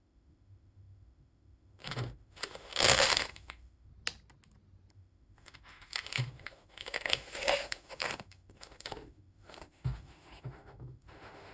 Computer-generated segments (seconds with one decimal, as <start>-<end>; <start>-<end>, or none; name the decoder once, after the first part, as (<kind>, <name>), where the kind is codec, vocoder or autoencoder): 0.0-3.9 (autoencoder, DAC-VAE); 4.9-11.5